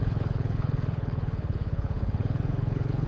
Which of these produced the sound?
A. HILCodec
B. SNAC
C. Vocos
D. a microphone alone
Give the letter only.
A